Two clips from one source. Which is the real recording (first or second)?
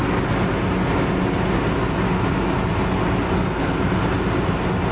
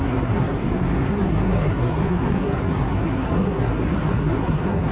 first